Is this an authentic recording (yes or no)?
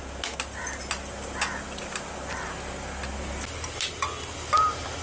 yes